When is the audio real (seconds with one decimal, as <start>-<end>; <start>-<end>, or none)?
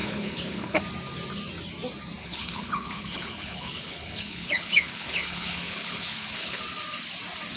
0.8-2.2; 6.6-7.6